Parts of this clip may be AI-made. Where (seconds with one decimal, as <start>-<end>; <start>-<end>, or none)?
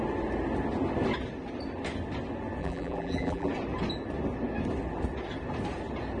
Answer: 2.6-3.5